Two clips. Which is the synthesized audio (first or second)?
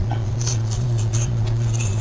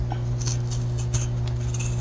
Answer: first